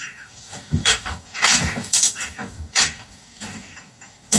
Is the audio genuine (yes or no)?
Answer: no